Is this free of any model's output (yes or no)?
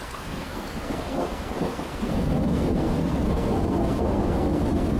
no